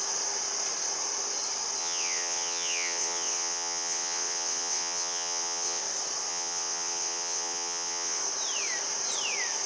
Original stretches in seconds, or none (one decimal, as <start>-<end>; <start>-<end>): 0.0-1.8; 5.8-6.3; 8.2-9.7